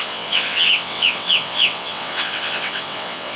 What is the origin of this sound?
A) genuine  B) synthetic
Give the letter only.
B